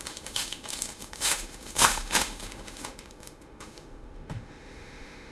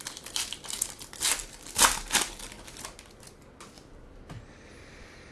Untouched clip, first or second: second